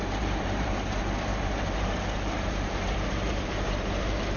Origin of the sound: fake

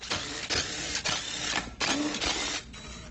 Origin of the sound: real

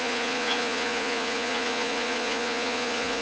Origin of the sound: fake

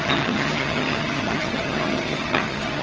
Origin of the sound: fake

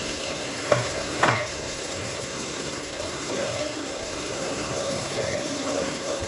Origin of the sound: fake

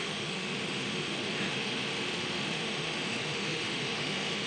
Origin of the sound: fake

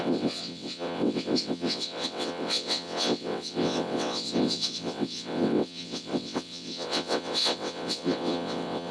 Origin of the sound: fake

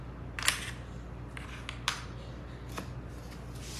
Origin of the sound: real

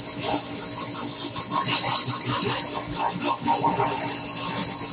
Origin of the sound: real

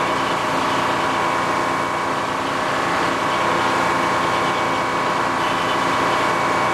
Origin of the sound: real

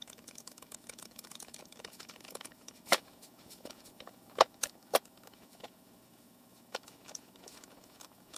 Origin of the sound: fake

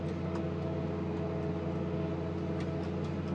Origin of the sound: real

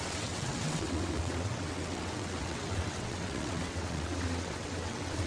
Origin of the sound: fake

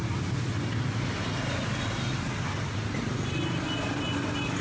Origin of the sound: real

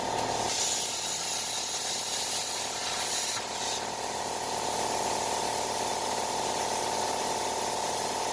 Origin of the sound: real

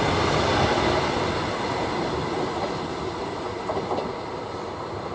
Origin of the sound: real